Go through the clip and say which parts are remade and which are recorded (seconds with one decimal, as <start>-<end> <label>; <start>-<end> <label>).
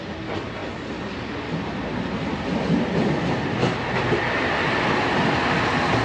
0.0-6.0 recorded